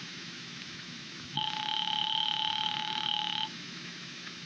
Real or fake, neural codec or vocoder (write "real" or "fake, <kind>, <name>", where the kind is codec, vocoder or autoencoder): fake, autoencoder, DAC-VAE